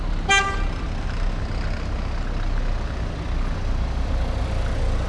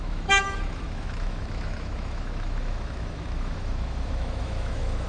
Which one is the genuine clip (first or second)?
first